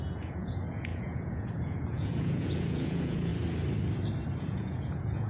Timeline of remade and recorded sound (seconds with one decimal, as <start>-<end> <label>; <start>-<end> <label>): 0.0-3.3 remade; 3.3-4.4 recorded; 4.4-5.3 remade